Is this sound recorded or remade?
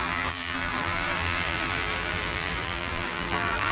remade